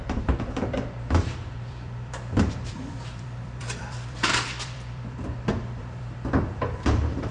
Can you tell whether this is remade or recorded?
remade